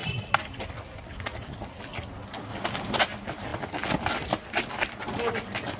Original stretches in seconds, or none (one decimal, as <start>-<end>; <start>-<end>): 0.0-5.8